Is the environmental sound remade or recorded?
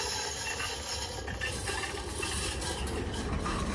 recorded